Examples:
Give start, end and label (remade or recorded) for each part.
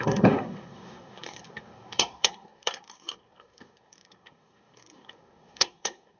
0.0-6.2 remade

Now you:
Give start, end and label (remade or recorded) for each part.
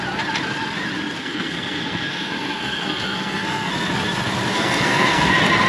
0.0-1.2 recorded; 1.2-3.7 remade; 3.7-4.5 recorded; 4.5-5.3 remade; 5.3-5.7 recorded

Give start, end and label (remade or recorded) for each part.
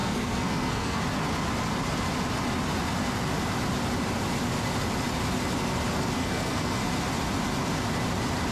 0.0-1.0 remade; 1.0-6.2 recorded; 6.2-6.9 remade; 6.9-8.5 recorded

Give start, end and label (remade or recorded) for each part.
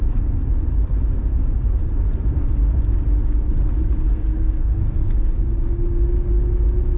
0.0-4.1 recorded; 4.1-5.1 remade; 5.1-7.0 recorded